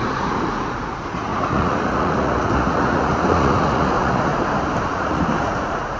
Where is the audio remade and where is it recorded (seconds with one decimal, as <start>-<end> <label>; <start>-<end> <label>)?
0.0-4.3 remade; 4.3-4.9 recorded; 4.9-6.0 remade